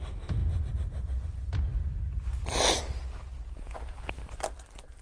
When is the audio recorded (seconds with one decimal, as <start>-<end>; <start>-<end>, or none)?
0.0-5.0